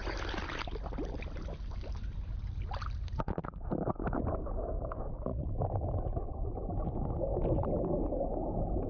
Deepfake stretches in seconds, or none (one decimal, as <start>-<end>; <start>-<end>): 5.3-8.4